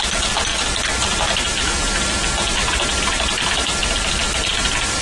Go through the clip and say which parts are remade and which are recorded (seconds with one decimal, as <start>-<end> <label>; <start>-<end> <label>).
0.0-0.5 recorded; 0.5-1.6 remade; 1.6-4.2 recorded; 4.2-5.0 remade